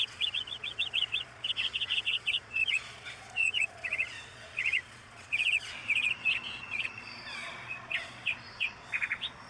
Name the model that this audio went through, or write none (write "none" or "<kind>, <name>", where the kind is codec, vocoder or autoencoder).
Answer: vocoder, Vocos